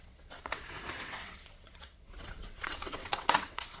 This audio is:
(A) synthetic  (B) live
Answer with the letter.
A